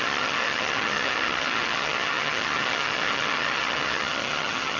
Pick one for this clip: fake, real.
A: fake